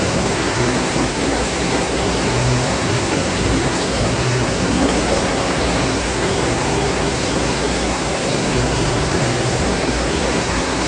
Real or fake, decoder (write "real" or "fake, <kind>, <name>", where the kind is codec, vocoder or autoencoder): fake, codec, SNAC